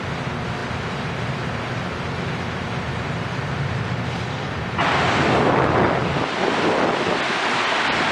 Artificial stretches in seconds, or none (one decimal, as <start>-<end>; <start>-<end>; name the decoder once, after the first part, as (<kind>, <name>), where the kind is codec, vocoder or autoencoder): 0.6-5.5 (vocoder, BigVGAN v2); 6.0-7.2

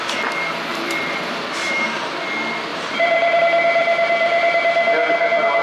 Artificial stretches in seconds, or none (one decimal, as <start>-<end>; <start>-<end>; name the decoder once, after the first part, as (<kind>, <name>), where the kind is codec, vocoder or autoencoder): 0.7-2.3 (vocoder, BigVGAN v2); 2.7-3.4; 3.8-4.6

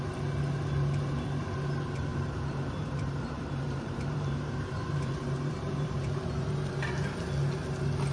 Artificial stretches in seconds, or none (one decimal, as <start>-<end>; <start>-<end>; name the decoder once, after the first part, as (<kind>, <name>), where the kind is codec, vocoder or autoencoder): 2.1-6.9 (vocoder, BigVGAN v2)

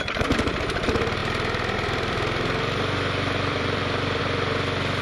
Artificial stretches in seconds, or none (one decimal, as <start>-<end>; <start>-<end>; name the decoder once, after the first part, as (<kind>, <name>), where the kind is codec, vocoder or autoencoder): 1.2-4.2 (vocoder, BigVGAN v2)

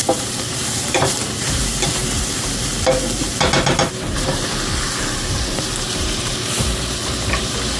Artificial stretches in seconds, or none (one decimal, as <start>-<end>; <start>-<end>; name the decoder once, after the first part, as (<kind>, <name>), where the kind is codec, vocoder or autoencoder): 0.0-2.7 (vocoder, BigVGAN v2); 3.2-7.8

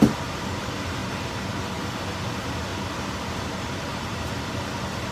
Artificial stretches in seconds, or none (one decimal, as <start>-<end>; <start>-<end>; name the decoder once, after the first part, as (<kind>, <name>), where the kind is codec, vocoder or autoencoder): 1.0-1.8 (vocoder, BigVGAN v2); 2.7-4.3